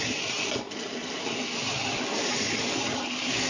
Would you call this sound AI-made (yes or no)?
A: no